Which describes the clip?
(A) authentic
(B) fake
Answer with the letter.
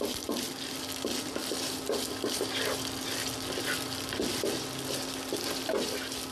A